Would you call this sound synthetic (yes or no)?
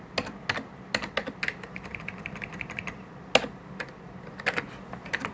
no